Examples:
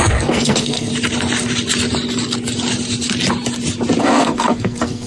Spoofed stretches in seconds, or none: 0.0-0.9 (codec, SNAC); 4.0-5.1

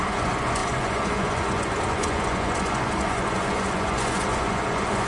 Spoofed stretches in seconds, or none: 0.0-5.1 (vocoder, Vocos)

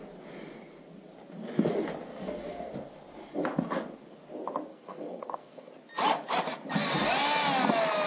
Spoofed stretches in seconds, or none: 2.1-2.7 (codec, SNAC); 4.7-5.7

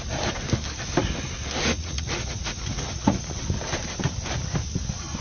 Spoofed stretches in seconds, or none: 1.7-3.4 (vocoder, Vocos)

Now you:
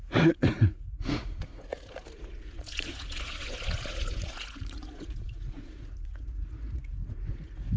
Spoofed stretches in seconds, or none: 0.0-7.8 (vocoder, Vocos)

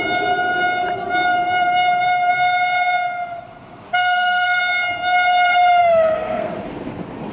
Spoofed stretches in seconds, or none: 3.9-4.6 (codec, SNAC); 5.8-6.5

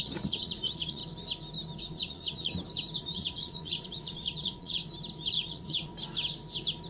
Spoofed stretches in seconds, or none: 0.0-1.0 (vocoder, Vocos); 1.8-2.5; 3.0-4.8; 5.3-5.9